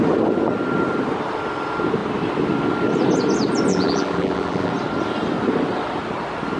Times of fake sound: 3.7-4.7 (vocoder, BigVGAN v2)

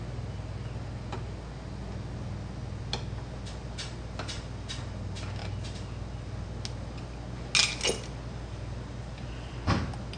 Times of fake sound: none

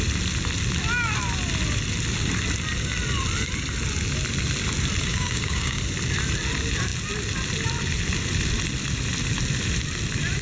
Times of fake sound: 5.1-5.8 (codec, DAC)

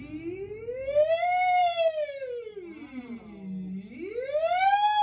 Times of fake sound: none